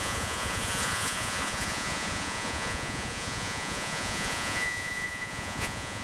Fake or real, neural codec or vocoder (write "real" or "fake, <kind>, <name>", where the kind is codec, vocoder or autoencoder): fake, vocoder, Vocos